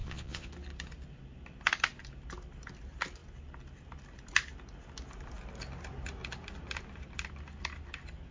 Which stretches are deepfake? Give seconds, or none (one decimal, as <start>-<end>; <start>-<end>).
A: 0.0-0.5